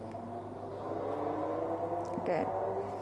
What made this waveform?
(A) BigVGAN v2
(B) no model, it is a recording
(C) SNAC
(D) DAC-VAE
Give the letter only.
B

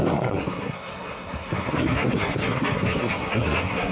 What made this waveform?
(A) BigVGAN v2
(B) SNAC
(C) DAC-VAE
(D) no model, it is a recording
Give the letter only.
B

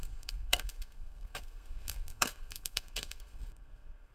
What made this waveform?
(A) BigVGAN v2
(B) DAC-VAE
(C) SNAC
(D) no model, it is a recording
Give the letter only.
C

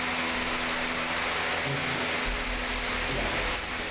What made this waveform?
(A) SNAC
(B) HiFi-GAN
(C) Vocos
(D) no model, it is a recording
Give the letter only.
D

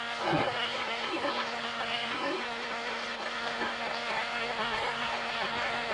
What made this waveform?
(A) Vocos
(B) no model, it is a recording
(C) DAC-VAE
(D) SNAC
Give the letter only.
D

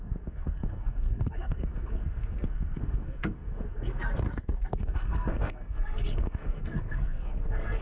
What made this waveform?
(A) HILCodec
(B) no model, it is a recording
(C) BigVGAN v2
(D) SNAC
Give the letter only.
D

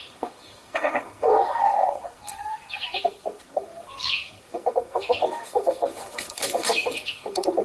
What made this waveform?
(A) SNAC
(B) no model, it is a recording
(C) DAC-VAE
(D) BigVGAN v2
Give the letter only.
A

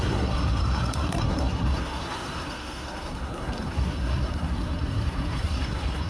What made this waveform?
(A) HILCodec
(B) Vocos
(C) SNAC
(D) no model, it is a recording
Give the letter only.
C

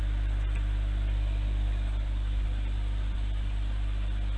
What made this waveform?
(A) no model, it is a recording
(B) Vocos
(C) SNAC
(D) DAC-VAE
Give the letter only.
A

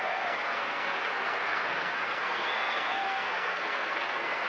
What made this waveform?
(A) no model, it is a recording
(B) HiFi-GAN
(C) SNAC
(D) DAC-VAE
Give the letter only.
C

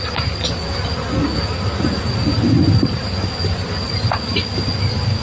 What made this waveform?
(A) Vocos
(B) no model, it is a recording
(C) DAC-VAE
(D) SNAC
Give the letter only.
B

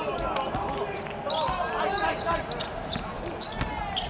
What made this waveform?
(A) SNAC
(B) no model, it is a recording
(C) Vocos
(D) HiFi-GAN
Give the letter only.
B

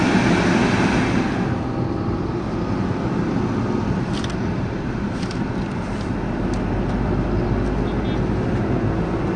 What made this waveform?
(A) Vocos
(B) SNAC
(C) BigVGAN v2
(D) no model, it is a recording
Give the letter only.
D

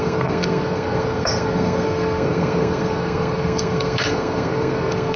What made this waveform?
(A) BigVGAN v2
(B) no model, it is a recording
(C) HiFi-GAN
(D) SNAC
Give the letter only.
D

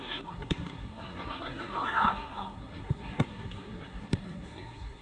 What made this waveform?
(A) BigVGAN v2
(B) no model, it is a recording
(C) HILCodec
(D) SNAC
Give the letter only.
D